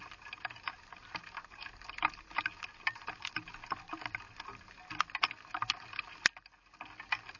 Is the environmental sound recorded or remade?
recorded